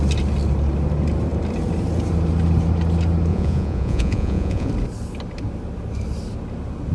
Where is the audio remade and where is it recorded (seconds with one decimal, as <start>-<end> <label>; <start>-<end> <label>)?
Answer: 0.0-3.3 recorded; 3.3-4.7 remade; 4.7-6.9 recorded